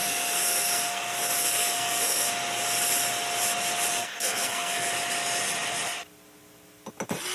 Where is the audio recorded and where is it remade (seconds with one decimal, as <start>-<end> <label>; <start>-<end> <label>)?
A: 0.0-2.3 remade; 2.3-4.0 recorded; 4.0-4.9 remade; 4.9-7.3 recorded